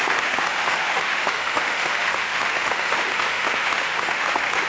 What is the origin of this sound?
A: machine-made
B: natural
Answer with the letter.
A